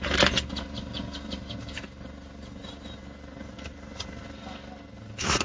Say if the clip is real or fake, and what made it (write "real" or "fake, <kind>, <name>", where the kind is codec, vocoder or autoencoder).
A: real